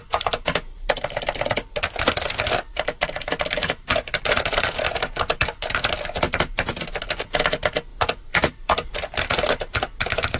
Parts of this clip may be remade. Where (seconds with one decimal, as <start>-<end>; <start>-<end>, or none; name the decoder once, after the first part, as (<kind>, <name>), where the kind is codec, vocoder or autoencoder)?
0.0-1.5 (vocoder, BigVGAN v2); 2.7-5.7; 7.9-8.9